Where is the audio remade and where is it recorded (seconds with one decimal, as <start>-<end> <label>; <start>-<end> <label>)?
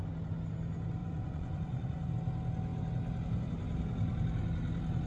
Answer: 0.0-1.0 recorded; 1.0-2.1 remade; 2.1-5.1 recorded